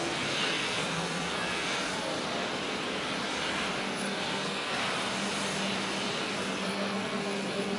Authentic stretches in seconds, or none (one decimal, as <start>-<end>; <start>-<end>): 2.1-3.8; 4.8-6.3